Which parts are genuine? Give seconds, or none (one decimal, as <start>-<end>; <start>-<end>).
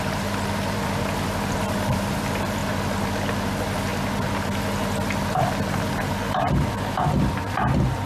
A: 2.6-3.5; 3.9-7.4